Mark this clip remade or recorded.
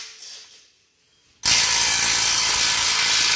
recorded